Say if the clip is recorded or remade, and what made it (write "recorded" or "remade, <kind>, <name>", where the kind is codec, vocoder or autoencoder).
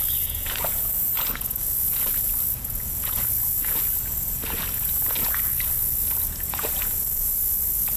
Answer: remade, vocoder, Vocos